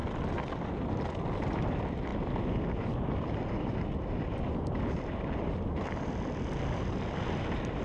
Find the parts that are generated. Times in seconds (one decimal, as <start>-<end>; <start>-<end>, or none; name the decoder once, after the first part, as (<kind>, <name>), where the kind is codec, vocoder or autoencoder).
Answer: none